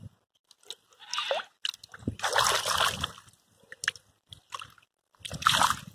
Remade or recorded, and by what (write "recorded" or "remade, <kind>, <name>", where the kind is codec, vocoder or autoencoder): recorded